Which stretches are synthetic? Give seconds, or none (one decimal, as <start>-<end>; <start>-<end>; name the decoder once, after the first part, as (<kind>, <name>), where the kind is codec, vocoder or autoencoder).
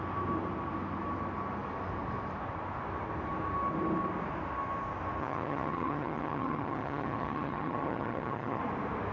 5.2-8.6 (vocoder, HiFi-GAN)